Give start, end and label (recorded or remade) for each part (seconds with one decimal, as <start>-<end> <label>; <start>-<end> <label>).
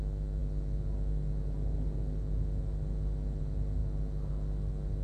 0.0-5.0 recorded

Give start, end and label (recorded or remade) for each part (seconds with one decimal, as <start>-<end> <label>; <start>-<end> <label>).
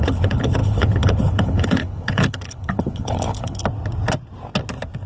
0.0-3.6 remade; 3.6-5.1 recorded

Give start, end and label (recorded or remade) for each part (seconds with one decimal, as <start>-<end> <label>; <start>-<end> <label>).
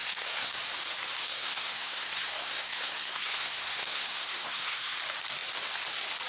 0.0-0.6 remade; 0.6-1.2 recorded; 1.2-5.0 remade; 5.0-6.3 recorded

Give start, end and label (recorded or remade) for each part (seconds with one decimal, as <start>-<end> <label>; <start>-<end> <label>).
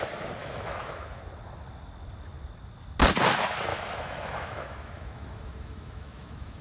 0.0-0.4 recorded; 0.4-1.2 remade; 1.2-3.7 recorded; 3.7-6.6 remade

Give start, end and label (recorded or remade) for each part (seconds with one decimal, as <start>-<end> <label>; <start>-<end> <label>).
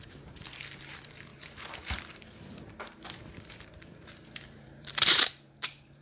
0.0-6.0 remade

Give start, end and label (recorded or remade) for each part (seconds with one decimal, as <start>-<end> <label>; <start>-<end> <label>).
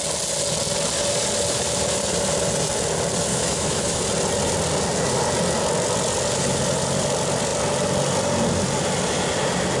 0.0-3.3 recorded; 3.3-4.0 remade; 4.0-9.8 recorded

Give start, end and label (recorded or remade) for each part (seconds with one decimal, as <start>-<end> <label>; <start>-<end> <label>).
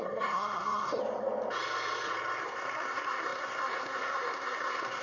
0.0-1.0 remade; 1.0-2.4 recorded; 2.4-5.0 remade